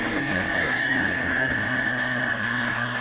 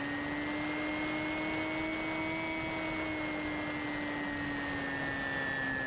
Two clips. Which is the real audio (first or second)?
second